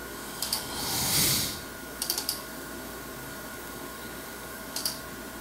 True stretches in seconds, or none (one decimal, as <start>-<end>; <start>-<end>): 0.7-1.8; 5.0-5.4